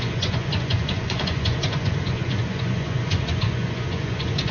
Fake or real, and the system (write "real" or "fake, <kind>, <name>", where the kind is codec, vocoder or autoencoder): fake, vocoder, Vocos